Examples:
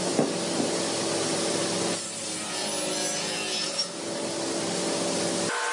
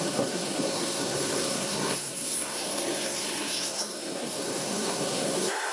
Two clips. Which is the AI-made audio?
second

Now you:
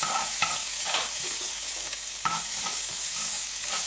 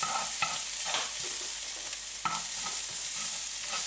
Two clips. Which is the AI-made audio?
first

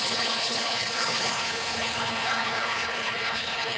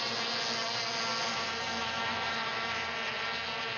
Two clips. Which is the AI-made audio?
first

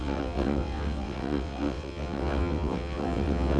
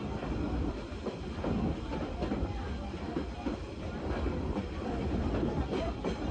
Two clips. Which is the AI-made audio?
first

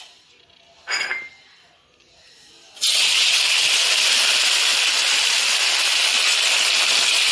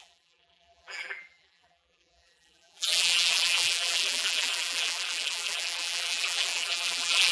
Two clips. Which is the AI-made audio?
second